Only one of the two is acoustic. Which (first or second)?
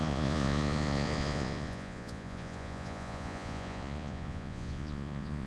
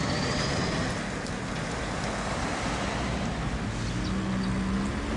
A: second